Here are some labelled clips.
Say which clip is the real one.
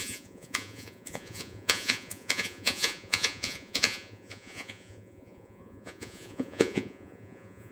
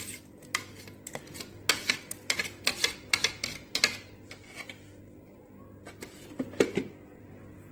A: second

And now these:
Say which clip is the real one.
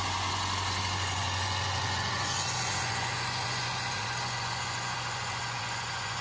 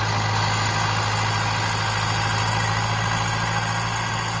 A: second